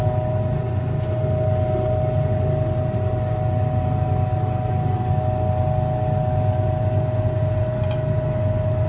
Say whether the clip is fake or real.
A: real